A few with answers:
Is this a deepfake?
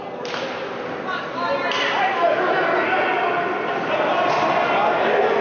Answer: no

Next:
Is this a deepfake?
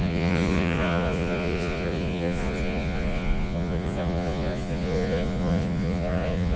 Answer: yes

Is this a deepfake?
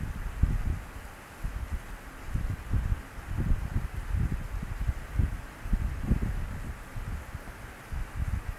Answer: no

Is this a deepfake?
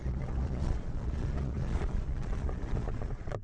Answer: yes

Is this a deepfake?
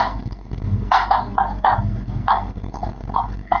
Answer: yes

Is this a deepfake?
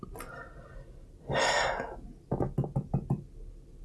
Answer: no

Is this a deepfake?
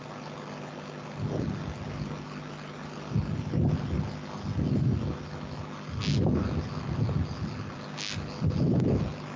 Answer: no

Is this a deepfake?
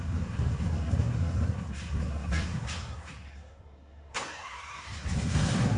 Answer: yes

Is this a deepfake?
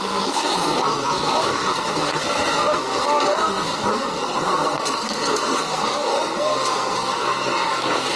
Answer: yes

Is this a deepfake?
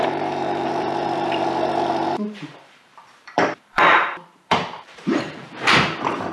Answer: yes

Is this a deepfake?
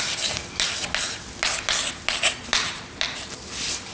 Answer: no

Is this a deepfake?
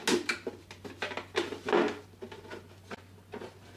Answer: no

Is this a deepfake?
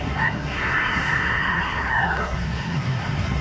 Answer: yes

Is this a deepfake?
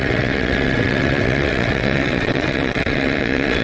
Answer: yes